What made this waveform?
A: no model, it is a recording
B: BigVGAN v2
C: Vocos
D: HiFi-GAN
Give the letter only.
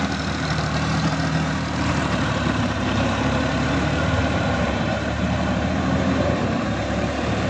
B